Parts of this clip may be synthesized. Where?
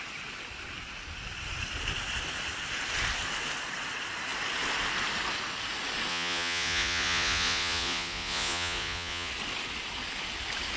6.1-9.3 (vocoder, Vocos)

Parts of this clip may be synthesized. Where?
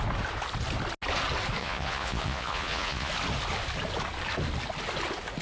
1.6-3.1 (vocoder, Vocos)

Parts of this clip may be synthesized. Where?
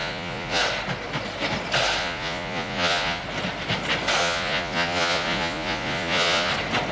0.0-0.6 (vocoder, Vocos); 2.0-3.2; 4.2-6.5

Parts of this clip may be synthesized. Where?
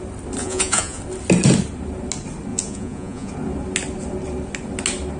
0.4-1.0 (vocoder, Vocos); 2.5-3.3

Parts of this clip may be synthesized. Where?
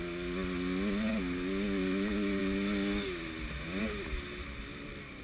none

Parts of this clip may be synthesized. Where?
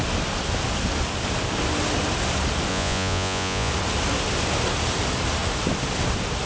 2.7-3.7 (vocoder, Vocos)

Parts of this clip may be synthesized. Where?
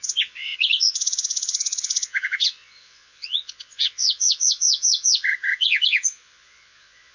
0.0-7.1 (vocoder, Vocos)